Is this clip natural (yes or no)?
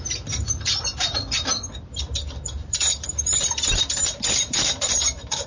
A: no